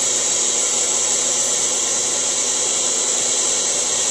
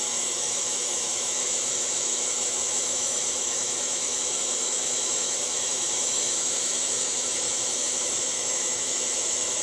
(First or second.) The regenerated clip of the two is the second